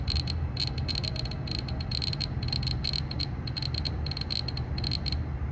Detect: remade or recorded recorded